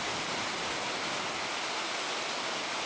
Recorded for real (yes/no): yes